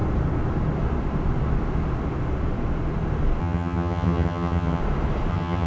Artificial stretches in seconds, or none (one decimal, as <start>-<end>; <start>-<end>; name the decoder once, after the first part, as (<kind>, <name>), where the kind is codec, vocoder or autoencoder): 3.4-4.8 (vocoder, HiFi-GAN); 5.3-5.7